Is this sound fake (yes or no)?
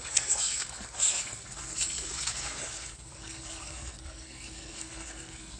yes